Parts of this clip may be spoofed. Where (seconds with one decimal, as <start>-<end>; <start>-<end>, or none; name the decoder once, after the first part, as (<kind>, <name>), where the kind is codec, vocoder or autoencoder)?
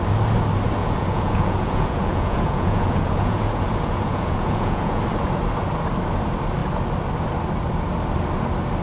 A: 0.8-5.0 (vocoder, Vocos)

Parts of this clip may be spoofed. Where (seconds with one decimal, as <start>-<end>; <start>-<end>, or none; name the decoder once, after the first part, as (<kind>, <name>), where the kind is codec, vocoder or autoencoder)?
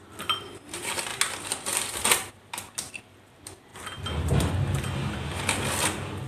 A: none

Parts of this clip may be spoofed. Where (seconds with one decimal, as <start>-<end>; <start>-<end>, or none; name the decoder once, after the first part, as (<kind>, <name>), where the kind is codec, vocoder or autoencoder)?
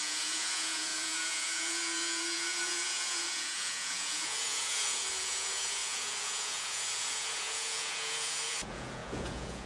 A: 0.0-9.7 (vocoder, Vocos)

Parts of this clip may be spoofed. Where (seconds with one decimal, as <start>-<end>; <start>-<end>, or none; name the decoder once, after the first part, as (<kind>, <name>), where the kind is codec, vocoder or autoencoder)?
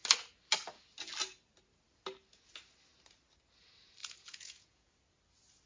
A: 4.0-4.9 (vocoder, Vocos)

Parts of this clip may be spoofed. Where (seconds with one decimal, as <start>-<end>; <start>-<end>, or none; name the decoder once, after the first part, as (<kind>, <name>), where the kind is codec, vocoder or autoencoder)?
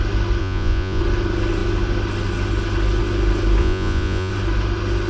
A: 0.4-1.0 (vocoder, Vocos); 3.6-4.3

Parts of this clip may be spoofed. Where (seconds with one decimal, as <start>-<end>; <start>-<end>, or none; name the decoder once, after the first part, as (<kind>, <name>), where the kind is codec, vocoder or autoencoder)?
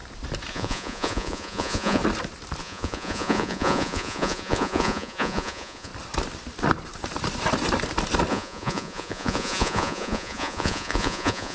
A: 0.5-2.0 (vocoder, Vocos); 2.6-5.9; 8.3-11.5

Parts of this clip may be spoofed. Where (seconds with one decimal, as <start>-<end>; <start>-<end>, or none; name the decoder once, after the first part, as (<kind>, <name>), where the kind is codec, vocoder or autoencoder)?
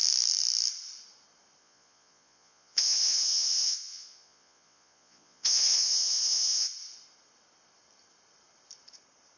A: 1.6-6.7 (vocoder, Vocos)